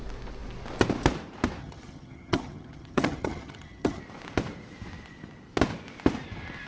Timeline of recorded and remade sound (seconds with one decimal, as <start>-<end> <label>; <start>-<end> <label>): 0.0-1.6 recorded; 1.6-4.0 remade; 4.0-6.7 recorded